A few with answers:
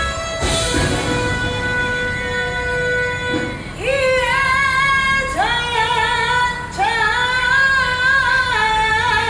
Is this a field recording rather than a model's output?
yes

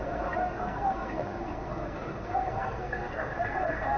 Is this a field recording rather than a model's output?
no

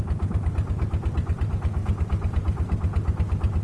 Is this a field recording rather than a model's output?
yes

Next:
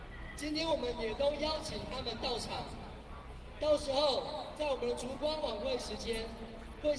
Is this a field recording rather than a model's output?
yes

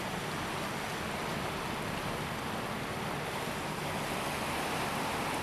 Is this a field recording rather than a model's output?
yes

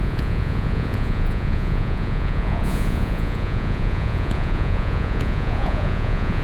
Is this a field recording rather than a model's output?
no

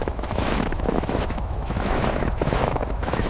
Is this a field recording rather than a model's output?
no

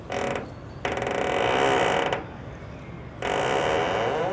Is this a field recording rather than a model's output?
yes